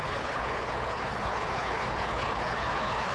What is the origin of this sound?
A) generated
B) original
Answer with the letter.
A